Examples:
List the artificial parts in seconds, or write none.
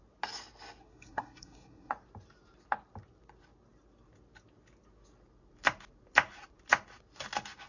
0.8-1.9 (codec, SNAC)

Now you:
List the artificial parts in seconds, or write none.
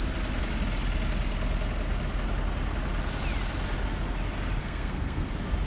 4.6-5.3 (codec, SNAC)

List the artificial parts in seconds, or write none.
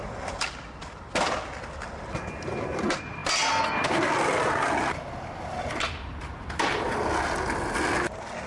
none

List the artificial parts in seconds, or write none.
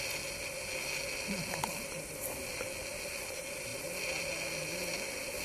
none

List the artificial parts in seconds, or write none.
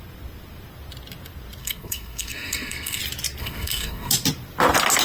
1.6-3.0 (codec, SNAC); 3.4-4.1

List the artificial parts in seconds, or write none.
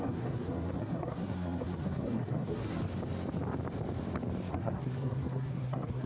0.0-2.8 (codec, SNAC); 4.5-6.1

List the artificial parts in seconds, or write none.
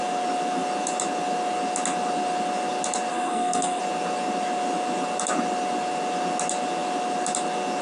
3.1-3.8 (codec, SNAC)